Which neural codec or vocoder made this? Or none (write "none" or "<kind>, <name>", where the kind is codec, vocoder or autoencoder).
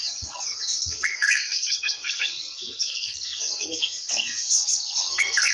codec, SNAC